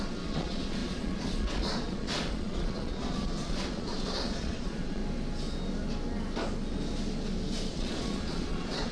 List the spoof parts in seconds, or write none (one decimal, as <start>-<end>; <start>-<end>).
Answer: 0.0-5.0; 7.7-8.9